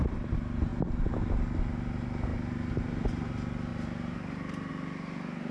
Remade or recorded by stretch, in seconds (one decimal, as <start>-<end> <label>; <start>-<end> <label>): 0.0-2.3 recorded; 2.3-3.3 remade; 3.3-3.7 recorded; 3.7-4.7 remade; 4.7-5.5 recorded